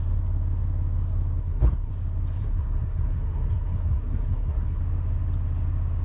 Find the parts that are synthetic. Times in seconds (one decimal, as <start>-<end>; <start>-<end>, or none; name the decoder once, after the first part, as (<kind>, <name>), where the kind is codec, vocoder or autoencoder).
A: 1.4-1.9 (codec, SNAC); 2.4-4.8